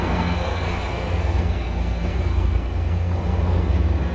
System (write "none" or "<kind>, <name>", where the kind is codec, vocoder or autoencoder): codec, SNAC